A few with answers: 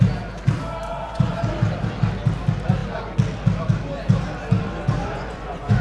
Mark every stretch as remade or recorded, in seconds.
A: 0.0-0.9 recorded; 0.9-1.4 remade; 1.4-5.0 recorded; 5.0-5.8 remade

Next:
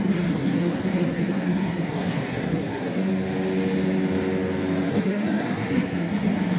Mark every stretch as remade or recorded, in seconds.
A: 0.0-3.1 remade; 3.1-4.9 recorded; 4.9-6.6 remade